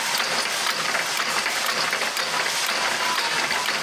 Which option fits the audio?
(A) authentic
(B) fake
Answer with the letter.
A